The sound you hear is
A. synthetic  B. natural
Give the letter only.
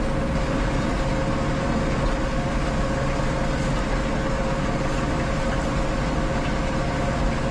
B